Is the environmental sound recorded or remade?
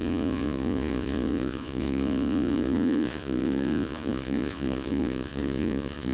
remade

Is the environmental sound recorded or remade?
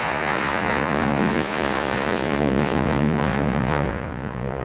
remade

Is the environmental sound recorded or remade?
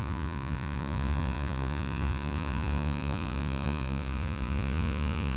remade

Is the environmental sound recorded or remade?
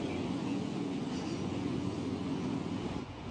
remade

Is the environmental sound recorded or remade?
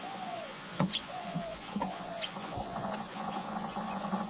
remade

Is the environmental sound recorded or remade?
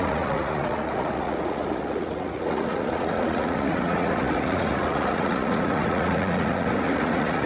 remade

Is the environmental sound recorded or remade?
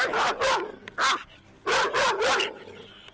recorded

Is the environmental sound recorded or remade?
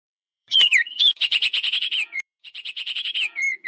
remade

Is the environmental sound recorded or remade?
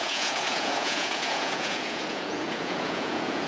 remade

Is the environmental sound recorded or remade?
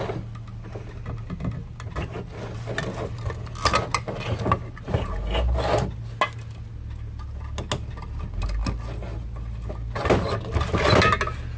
recorded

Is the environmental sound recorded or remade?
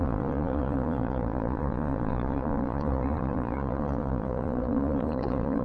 remade